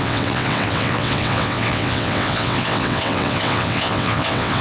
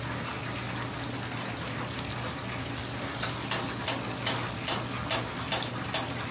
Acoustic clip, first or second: second